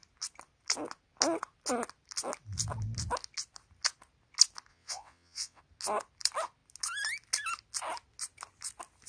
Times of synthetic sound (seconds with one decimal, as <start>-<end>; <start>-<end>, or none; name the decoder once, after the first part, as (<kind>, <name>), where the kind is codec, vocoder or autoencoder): 4.7-5.6 (vocoder, WaveNeXt)